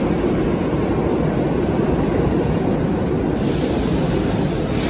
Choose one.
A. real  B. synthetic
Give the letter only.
A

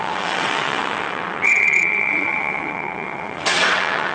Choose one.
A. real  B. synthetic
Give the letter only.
B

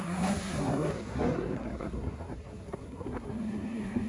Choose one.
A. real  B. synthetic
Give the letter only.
B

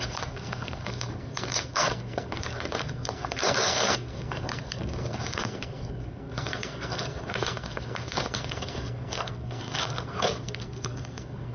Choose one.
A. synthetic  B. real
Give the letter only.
A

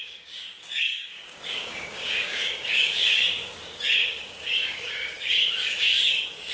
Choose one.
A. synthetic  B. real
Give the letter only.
A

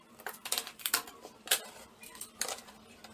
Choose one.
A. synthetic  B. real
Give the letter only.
B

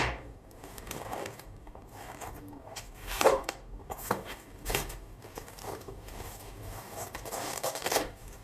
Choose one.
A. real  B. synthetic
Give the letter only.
B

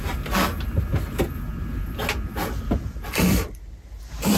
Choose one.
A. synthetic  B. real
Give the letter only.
B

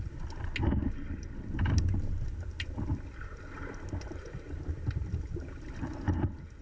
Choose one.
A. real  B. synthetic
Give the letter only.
A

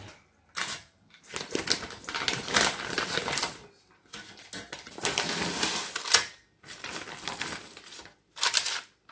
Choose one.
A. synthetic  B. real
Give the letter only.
B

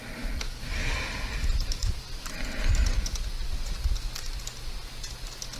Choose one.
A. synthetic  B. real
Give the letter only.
B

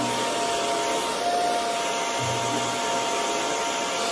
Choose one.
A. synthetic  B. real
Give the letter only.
B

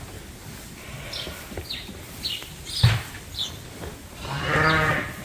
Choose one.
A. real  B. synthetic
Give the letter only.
A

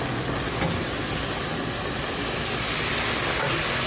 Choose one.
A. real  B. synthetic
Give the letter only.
A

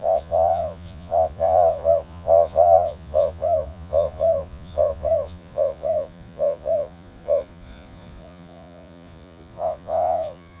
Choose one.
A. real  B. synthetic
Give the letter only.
B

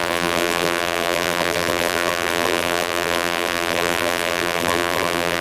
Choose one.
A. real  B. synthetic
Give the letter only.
B